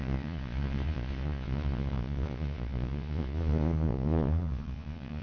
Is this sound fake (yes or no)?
yes